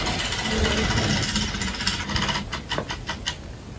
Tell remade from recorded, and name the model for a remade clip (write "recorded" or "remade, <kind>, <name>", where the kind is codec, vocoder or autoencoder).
recorded